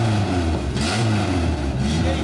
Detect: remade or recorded recorded